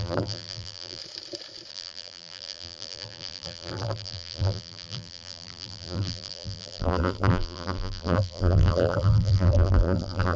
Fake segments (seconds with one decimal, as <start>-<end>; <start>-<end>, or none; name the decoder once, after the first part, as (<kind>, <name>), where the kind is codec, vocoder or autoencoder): 0.0-1.0 (vocoder, BigVGAN v2); 1.7-10.4